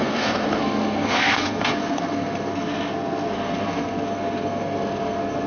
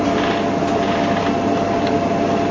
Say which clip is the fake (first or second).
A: first